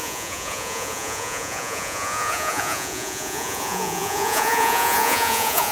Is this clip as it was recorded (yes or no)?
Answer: no